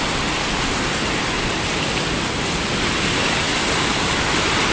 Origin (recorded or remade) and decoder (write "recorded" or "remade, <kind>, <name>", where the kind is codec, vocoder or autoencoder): recorded